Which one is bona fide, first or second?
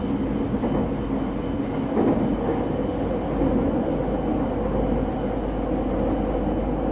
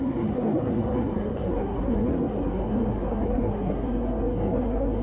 first